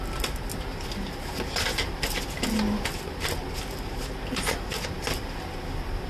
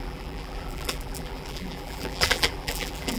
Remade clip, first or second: second